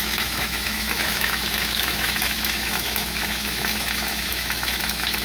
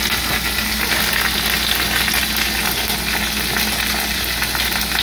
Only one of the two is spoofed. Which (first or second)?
first